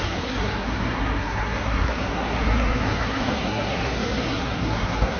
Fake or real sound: fake